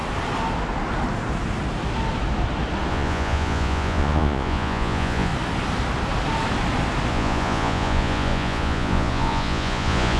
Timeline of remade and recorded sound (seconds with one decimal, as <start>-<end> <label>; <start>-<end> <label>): 0.0-2.9 recorded; 2.9-5.3 remade; 5.3-7.1 recorded; 7.1-10.2 remade